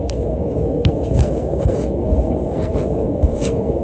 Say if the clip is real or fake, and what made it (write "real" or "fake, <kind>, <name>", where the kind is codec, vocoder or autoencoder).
fake, codec, SNAC